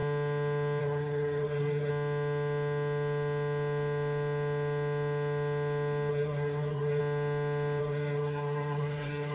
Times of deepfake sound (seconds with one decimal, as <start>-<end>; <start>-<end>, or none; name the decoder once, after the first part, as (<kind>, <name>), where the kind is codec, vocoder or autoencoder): 0.8-1.9 (codec, SNAC); 6.1-7.0; 7.8-9.3